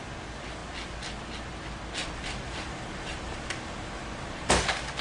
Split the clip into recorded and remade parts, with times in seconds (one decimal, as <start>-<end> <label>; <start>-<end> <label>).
0.0-2.0 recorded; 2.0-4.5 remade; 4.5-5.0 recorded